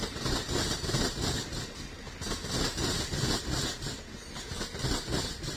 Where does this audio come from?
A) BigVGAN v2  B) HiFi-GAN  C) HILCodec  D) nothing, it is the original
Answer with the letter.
D